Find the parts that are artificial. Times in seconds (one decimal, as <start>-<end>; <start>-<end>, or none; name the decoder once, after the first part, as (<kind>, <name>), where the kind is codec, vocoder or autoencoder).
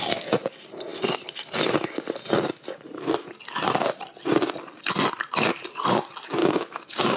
6.4-7.2 (codec, DAC)